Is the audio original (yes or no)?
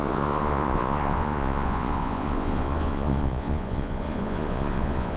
no